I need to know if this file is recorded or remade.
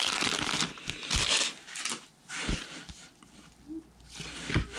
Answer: recorded